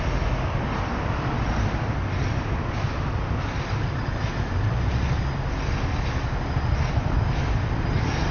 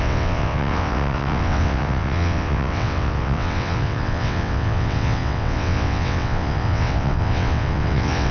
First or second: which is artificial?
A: second